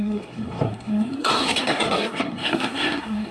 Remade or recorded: remade